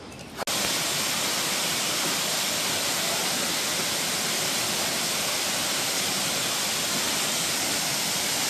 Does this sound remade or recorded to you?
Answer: recorded